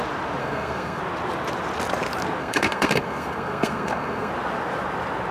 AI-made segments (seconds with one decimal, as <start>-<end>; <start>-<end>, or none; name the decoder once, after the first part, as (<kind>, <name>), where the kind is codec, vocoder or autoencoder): 0.4-1.0 (codec, SNAC); 2.4-4.3